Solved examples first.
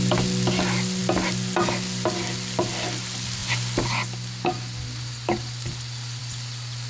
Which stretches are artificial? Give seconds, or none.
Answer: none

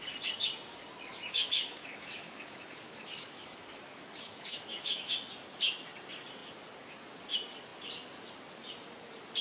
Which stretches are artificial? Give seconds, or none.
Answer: 1.2-5.1

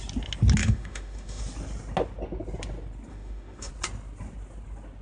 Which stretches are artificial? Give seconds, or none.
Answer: 0.6-1.4; 3.1-3.7

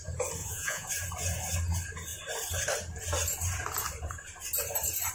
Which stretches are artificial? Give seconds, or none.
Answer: 0.4-0.9

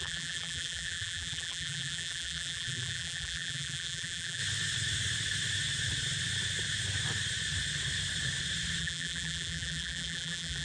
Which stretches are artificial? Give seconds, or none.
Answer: 0.0-4.4; 8.8-10.6